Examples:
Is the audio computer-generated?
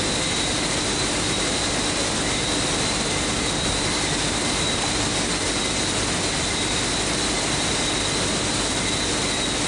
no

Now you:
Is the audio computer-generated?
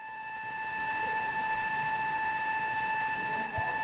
no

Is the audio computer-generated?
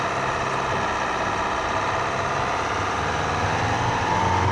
no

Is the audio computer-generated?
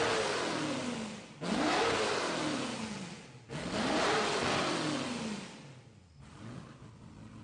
no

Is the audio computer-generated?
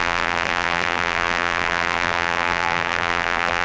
yes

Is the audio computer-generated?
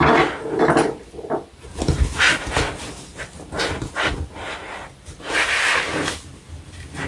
no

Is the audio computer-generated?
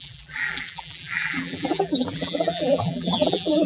yes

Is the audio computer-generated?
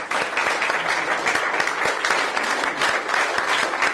no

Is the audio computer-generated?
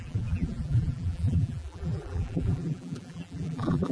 yes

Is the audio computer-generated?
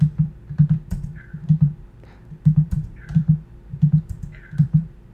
yes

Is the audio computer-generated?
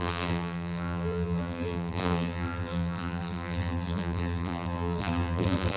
yes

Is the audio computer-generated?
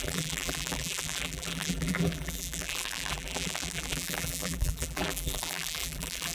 yes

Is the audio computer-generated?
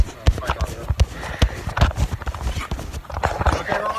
no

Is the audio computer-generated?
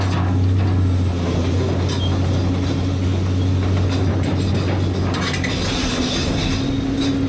no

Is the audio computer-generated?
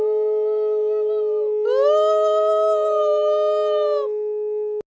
no